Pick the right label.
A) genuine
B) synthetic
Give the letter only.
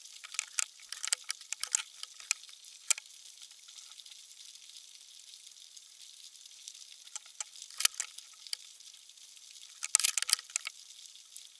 A